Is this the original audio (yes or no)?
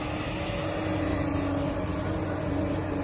yes